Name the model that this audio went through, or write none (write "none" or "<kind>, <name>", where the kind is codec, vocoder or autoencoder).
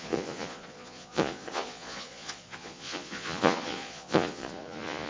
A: vocoder, Vocos